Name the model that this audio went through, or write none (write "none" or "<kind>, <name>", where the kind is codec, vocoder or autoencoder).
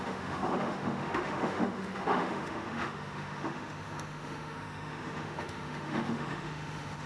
autoencoder, DAC-VAE